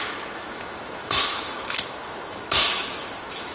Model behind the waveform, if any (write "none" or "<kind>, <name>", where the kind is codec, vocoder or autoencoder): autoencoder, DAC-VAE